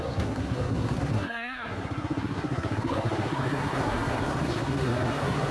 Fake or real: fake